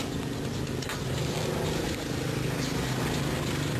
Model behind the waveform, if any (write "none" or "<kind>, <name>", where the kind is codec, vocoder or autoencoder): none